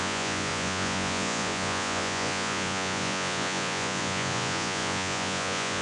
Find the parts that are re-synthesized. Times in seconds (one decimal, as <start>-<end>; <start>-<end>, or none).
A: 0.0-5.8